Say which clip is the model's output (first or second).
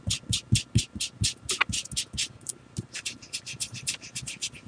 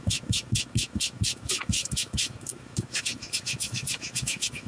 second